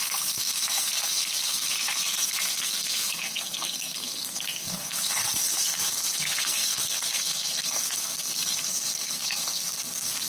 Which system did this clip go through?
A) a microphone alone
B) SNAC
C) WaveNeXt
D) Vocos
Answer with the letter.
B